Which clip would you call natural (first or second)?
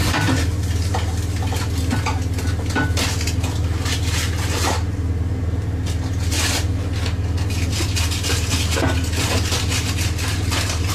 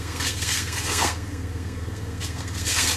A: first